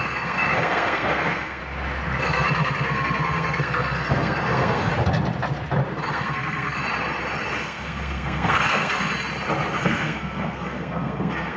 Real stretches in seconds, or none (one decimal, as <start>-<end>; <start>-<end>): 1.6-2.2; 4.9-6.1; 6.8-7.6; 9.0-9.8